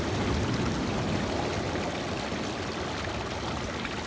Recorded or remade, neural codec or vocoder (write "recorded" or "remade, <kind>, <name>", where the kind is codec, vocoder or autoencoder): recorded